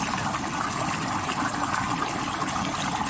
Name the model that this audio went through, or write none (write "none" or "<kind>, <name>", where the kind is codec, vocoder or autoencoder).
none